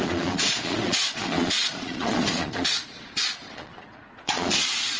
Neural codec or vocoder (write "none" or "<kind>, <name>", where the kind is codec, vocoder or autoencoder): vocoder, Vocos